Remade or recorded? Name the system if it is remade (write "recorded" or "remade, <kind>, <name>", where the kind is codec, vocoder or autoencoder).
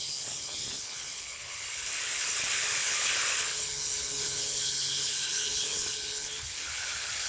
remade, codec, HILCodec